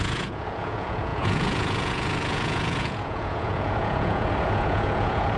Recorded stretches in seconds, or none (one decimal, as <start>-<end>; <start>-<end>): none